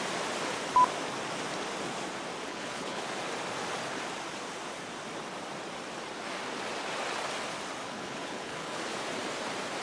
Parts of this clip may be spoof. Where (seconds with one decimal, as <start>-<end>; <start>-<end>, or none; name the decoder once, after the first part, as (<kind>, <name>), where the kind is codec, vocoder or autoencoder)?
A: 2.5-3.0 (codec, HILCodec); 7.8-8.8